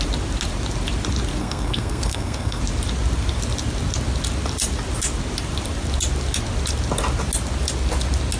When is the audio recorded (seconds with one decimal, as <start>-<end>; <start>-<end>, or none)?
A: 0.0-1.4; 2.6-8.4